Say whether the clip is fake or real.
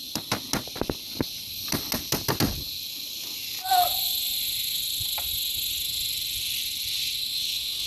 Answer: real